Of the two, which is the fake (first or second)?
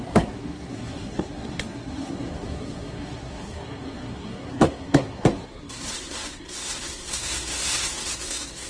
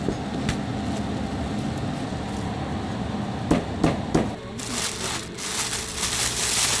first